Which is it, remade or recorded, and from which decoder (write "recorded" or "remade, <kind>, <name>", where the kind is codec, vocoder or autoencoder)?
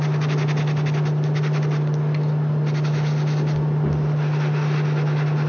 recorded